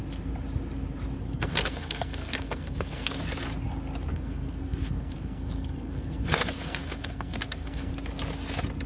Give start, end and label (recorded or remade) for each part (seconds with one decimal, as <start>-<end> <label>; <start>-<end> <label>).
0.0-1.2 recorded; 1.2-3.2 remade; 3.2-4.1 recorded; 4.1-7.9 remade; 7.9-8.9 recorded